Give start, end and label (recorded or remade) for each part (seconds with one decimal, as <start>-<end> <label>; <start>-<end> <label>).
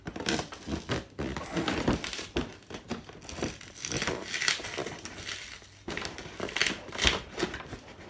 0.0-8.1 recorded